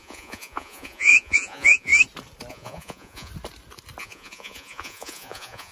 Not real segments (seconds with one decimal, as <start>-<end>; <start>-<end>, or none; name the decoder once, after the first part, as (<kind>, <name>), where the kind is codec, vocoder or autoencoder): 0.0-1.9 (vocoder, Vocos); 2.5-3.3; 4.0-5.7